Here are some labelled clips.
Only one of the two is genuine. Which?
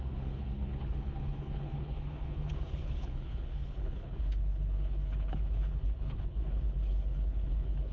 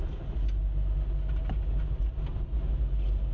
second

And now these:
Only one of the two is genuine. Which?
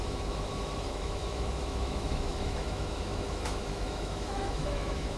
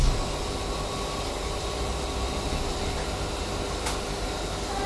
second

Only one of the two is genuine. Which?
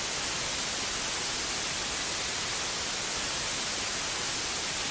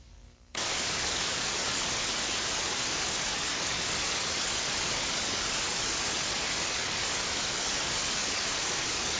first